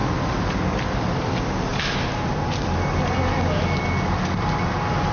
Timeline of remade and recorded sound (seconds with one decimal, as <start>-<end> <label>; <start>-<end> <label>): 0.0-0.6 remade; 0.6-5.1 recorded